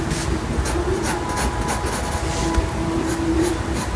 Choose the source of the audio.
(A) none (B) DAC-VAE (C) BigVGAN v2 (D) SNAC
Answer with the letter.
A